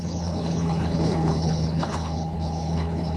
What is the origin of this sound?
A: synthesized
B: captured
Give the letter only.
A